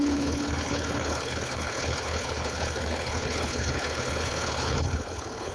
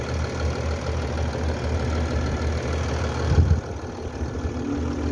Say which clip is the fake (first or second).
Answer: first